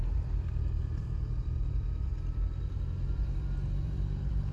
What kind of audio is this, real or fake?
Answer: fake